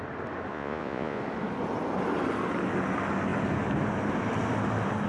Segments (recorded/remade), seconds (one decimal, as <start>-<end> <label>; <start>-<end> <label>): 0.0-0.5 recorded; 0.5-1.2 remade; 1.2-5.1 recorded